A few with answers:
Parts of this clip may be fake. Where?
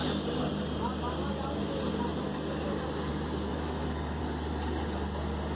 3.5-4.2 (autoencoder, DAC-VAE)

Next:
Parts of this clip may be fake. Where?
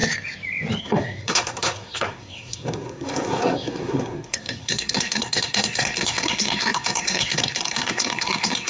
0.8-8.7 (codec, SNAC)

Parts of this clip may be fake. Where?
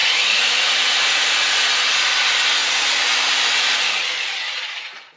0.0-0.7 (vocoder, Vocos)